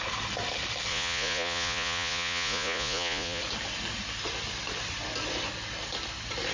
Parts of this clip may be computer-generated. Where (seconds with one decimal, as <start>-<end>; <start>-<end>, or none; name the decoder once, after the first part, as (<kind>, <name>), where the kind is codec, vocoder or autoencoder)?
0.9-3.4 (vocoder, Vocos)